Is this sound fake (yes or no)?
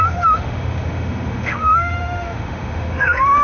yes